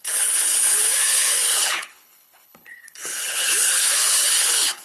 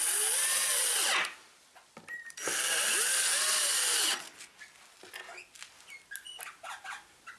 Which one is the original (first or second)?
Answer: second